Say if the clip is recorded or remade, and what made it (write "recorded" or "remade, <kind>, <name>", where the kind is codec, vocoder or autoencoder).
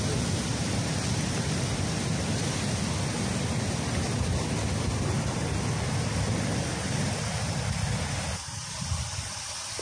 recorded